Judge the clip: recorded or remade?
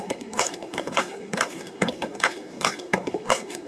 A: remade